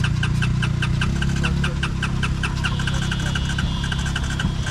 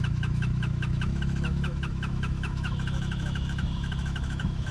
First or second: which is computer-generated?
second